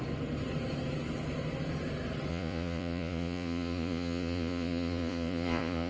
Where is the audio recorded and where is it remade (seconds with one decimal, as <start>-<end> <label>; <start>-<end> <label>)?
0.0-2.3 recorded; 2.3-5.9 remade

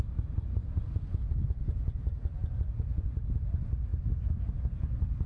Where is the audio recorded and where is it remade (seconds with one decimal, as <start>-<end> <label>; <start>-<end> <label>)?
0.0-5.3 recorded

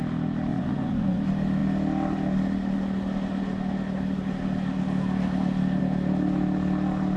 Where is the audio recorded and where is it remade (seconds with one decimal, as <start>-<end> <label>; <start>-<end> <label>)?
0.0-0.5 recorded; 0.5-1.2 remade; 1.2-7.2 recorded

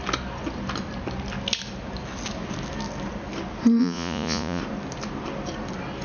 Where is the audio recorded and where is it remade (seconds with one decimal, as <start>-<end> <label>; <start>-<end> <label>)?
0.0-3.8 recorded; 3.8-4.6 remade; 4.6-6.0 recorded

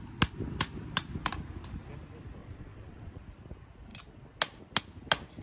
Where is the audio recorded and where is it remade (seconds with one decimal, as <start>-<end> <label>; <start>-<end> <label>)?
0.0-2.4 recorded; 2.4-3.2 remade; 3.2-5.4 recorded

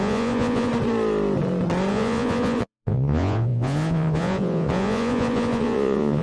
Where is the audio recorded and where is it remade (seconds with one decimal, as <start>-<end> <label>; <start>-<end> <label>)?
0.0-0.7 remade; 0.7-1.9 recorded; 1.9-6.2 remade